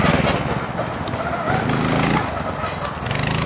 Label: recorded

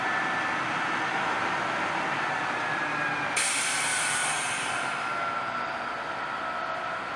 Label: recorded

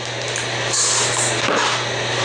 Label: recorded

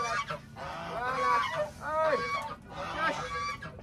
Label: recorded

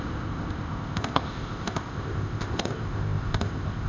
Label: remade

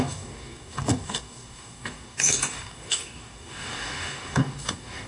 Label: remade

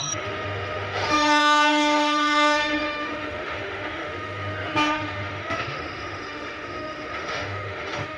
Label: remade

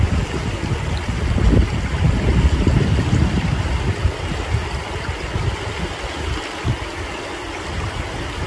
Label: recorded